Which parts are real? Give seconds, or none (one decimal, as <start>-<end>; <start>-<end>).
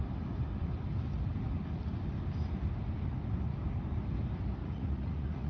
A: 0.0-4.6